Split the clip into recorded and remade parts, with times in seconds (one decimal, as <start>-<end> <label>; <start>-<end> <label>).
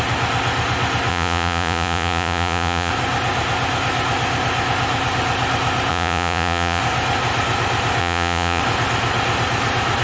0.0-1.1 recorded; 1.1-2.9 remade; 2.9-5.9 recorded; 5.9-6.8 remade; 6.8-8.0 recorded; 8.0-8.6 remade; 8.6-10.0 recorded